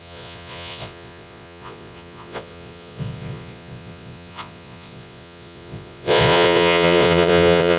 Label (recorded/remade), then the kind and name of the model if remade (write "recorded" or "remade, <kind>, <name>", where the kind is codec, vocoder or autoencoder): remade, vocoder, Vocos